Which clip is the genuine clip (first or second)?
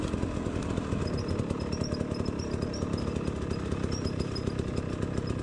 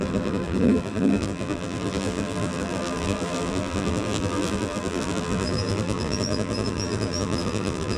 first